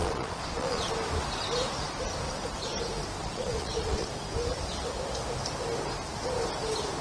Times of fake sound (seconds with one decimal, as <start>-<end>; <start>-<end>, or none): 0.0-0.9; 3.2-4.1